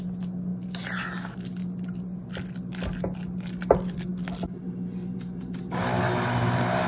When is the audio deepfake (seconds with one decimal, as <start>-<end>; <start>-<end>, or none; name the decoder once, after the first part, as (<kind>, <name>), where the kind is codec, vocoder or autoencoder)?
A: none